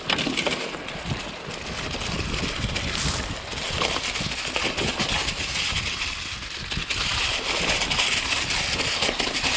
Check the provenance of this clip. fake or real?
real